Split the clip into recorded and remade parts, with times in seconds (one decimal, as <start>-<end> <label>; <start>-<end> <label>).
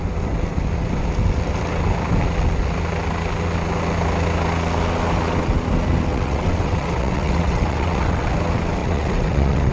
0.0-6.1 recorded; 6.1-8.3 remade; 8.3-8.8 recorded; 8.8-9.7 remade